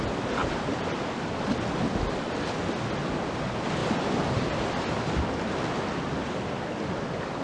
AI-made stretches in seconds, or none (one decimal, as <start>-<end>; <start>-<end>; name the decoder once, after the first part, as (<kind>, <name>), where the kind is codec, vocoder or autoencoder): none